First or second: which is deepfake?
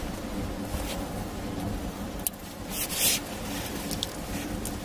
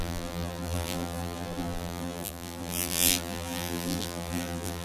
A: second